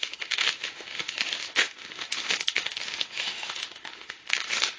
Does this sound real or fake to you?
fake